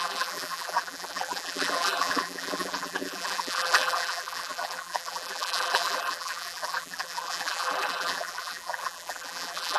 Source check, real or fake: fake